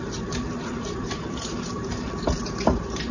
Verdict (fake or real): fake